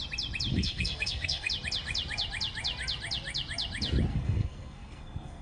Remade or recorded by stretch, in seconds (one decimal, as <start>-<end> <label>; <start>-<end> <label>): 0.0-0.5 recorded; 0.5-1.5 remade; 1.5-4.1 recorded; 4.1-5.4 remade